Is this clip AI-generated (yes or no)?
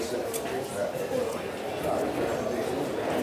no